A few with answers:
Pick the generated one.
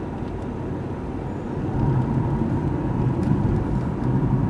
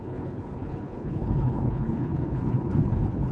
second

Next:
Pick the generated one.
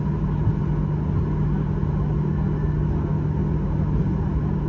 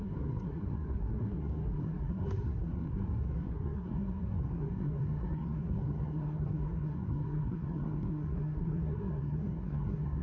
second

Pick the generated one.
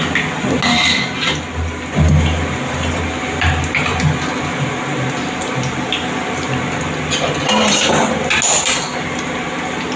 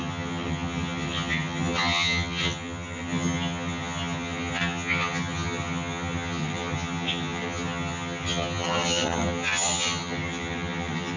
second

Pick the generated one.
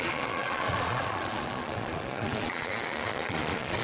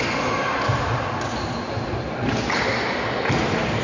first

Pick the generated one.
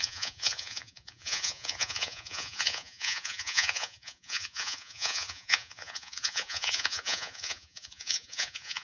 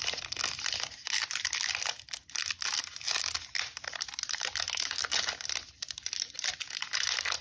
first